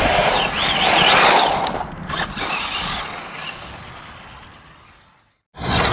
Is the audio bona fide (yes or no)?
yes